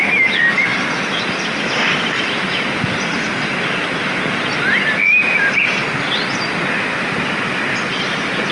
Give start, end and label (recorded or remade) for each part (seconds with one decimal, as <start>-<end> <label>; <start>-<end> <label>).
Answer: 0.0-8.5 recorded